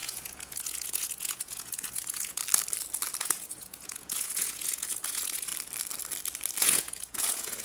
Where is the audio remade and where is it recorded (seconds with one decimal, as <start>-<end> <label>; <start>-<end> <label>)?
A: 0.0-2.4 remade; 2.4-3.2 recorded; 3.2-5.5 remade; 5.5-6.6 recorded; 6.6-7.6 remade